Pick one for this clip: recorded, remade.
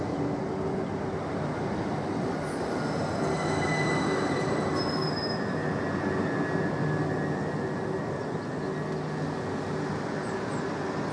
recorded